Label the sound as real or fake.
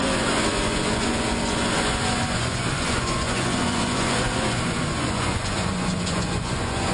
fake